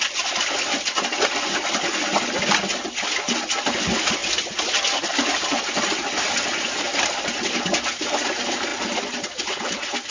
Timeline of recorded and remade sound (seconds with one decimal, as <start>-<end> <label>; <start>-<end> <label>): 0.0-10.1 recorded